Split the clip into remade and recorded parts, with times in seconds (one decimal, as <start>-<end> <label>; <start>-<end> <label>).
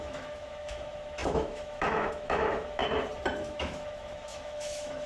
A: 0.0-2.8 remade; 2.8-3.4 recorded; 3.4-5.1 remade